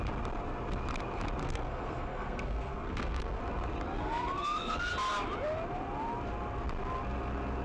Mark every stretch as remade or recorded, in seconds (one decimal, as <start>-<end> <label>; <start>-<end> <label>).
0.0-1.4 recorded; 1.4-3.4 remade; 3.4-4.0 recorded; 4.0-4.9 remade; 4.9-7.6 recorded